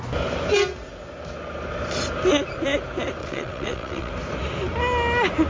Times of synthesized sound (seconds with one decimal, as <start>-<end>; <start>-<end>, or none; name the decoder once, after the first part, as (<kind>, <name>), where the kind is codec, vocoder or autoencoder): 3.2-4.1 (vocoder, WaveNeXt)